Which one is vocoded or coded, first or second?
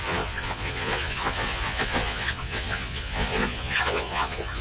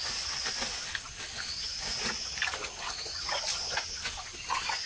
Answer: first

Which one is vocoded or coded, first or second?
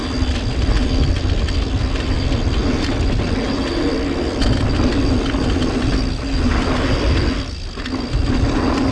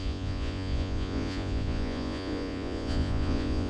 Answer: second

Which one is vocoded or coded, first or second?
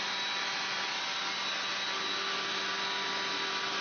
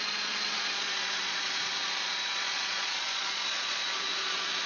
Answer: second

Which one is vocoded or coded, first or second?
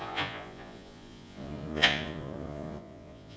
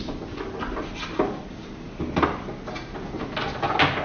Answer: first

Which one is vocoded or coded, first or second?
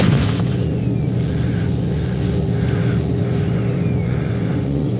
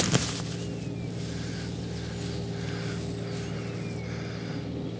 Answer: first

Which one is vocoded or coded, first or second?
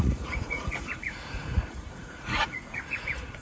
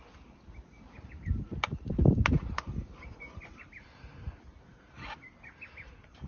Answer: first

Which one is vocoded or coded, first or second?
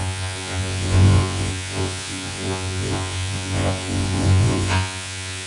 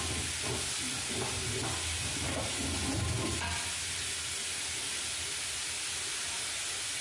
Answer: first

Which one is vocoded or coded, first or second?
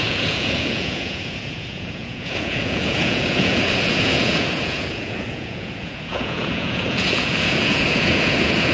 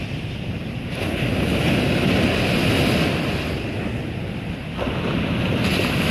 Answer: first